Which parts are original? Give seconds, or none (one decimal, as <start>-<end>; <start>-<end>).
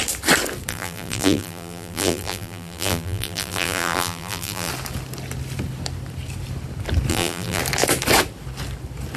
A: 0.0-0.7; 4.7-7.1; 7.6-9.2